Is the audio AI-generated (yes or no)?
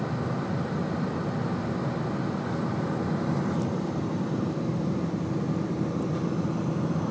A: no